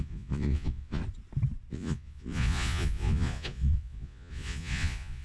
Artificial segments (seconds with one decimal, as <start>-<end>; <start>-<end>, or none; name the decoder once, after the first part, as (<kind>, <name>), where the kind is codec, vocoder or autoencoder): 0.0-1.0 (vocoder, Vocos); 1.7-5.2